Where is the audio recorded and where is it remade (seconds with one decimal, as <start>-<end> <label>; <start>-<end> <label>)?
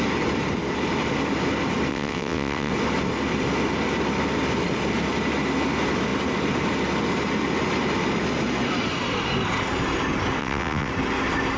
0.0-1.9 recorded; 1.9-2.7 remade; 2.7-10.4 recorded; 10.4-10.9 remade; 10.9-11.6 recorded